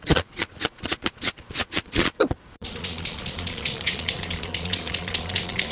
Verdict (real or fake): fake